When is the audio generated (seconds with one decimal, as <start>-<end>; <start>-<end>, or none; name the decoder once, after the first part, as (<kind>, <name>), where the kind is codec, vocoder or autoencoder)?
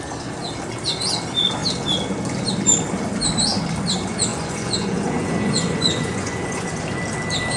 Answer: 4.3-6.8 (vocoder, Vocos)